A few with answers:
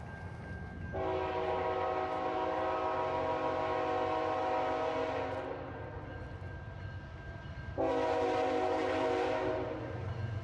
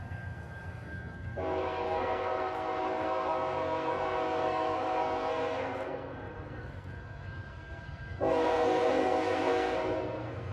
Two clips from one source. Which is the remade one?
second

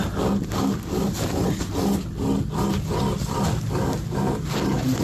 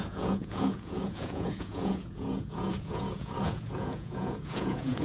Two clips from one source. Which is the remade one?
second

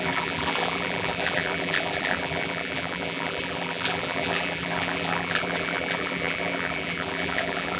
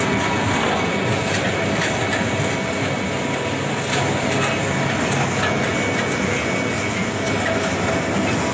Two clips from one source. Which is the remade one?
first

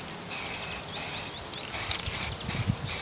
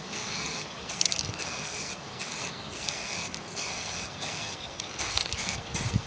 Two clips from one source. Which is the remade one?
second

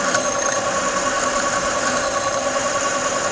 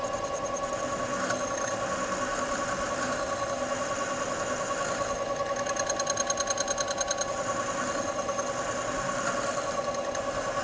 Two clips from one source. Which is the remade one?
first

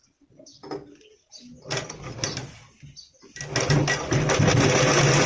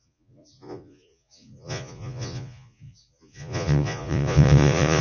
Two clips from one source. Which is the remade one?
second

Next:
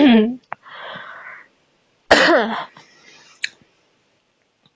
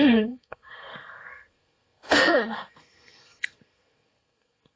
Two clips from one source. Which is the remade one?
second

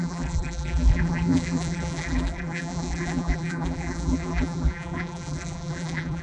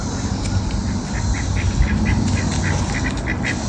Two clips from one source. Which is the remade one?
first